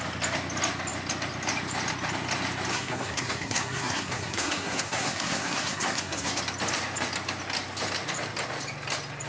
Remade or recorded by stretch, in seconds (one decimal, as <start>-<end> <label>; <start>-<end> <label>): 0.0-2.7 recorded; 2.7-6.4 remade; 6.4-9.3 recorded